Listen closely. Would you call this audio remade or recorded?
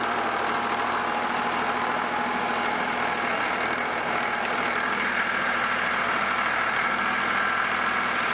recorded